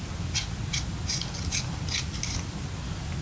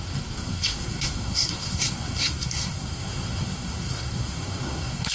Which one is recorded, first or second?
first